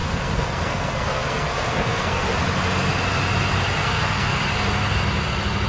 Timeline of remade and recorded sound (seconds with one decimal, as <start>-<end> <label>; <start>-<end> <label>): 0.0-2.4 remade; 2.4-3.8 recorded; 3.8-4.4 remade; 4.4-5.7 recorded